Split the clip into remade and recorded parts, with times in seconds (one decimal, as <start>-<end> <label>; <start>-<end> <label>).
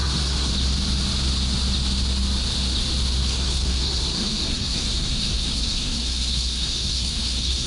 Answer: 0.0-0.5 remade; 0.5-3.2 recorded; 3.2-7.7 remade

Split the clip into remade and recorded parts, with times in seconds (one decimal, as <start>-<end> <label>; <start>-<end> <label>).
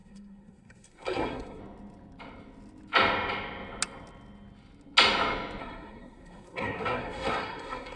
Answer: 0.0-1.6 remade; 1.6-5.6 recorded; 5.6-8.0 remade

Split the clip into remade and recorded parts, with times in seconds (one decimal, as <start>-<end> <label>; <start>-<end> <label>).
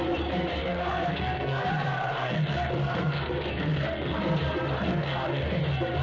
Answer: 0.0-0.6 recorded; 0.6-4.2 remade; 4.2-4.9 recorded; 4.9-5.6 remade; 5.6-6.0 recorded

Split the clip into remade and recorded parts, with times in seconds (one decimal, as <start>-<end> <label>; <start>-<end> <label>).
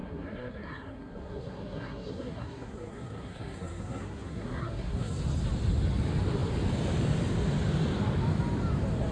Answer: 0.0-5.2 remade; 5.2-9.1 recorded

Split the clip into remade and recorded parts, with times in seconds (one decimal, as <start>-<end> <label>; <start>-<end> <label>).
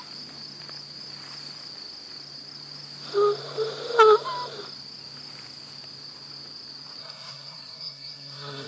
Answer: 0.0-7.0 recorded; 7.0-8.7 remade